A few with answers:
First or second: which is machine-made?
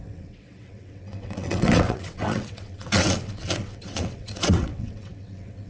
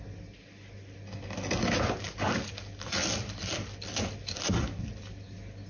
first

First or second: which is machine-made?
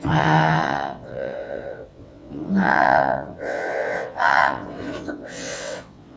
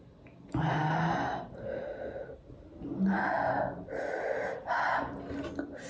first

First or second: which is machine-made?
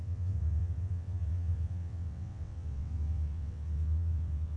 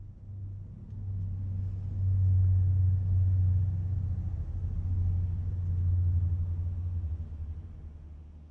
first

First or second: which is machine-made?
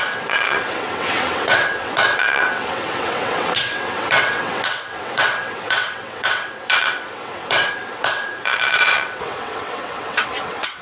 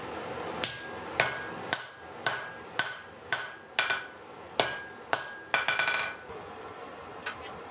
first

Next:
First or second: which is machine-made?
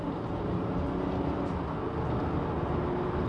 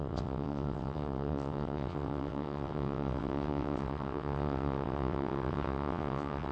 second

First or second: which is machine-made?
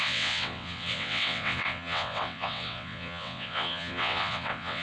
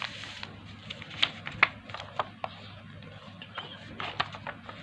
first